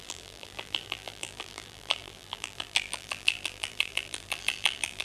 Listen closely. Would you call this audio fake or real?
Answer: fake